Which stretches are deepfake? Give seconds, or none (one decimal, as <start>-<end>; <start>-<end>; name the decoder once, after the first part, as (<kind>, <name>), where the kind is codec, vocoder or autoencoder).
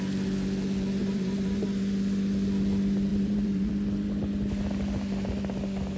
1.0-1.6 (vocoder, BigVGAN v2); 3.1-3.7